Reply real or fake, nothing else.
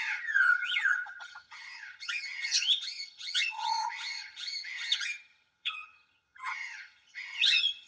fake